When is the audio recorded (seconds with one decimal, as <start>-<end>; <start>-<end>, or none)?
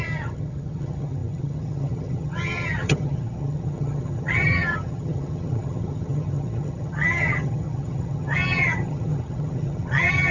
none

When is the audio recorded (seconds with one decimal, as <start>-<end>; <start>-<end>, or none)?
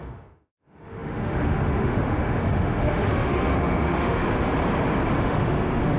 4.2-5.1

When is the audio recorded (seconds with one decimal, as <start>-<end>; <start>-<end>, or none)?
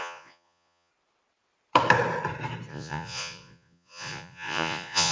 0.9-2.7